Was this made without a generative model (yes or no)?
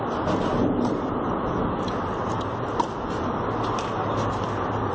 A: yes